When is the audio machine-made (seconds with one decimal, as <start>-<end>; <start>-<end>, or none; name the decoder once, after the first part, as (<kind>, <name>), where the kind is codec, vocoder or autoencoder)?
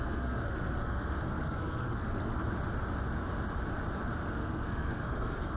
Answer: 0.0-2.4 (codec, SNAC); 4.3-5.6